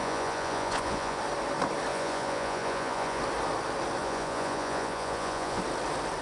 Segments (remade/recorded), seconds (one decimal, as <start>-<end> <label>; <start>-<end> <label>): 0.0-1.2 remade; 1.2-1.9 recorded; 1.9-3.2 remade; 3.2-4.0 recorded; 4.0-5.6 remade; 5.6-6.2 recorded